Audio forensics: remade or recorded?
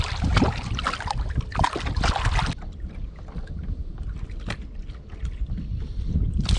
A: recorded